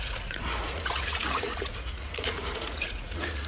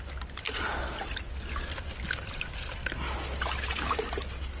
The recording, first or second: second